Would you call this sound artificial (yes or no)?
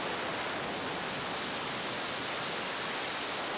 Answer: no